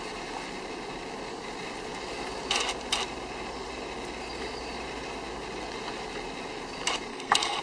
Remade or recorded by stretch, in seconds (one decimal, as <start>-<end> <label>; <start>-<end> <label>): 0.0-7.1 recorded; 7.1-7.6 remade